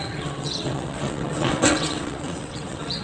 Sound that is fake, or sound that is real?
fake